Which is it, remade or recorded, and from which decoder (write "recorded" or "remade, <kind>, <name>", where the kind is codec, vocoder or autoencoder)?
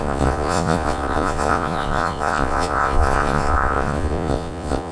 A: remade, vocoder, Vocos